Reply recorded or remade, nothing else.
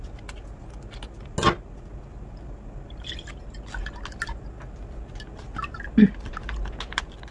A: recorded